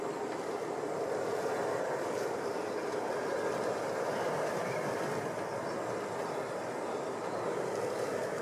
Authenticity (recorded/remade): recorded